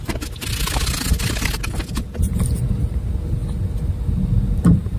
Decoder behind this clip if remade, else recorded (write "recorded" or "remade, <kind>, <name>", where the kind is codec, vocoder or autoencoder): recorded